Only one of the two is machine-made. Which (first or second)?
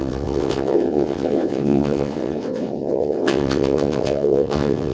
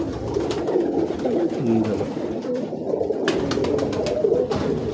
first